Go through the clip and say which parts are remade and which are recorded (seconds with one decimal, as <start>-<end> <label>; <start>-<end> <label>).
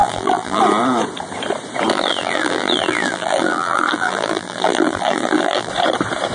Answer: 0.0-0.6 remade; 0.6-1.9 recorded; 1.9-5.7 remade; 5.7-6.3 recorded